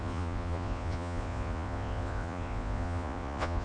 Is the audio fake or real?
fake